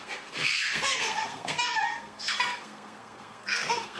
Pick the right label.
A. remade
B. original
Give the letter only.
A